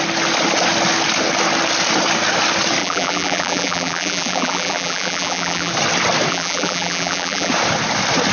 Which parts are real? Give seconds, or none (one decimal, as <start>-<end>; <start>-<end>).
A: 0.0-2.8; 5.7-6.3; 7.5-8.3